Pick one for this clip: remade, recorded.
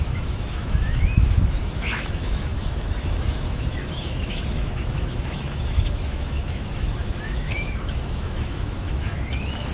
remade